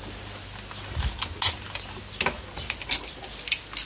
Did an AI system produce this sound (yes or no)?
no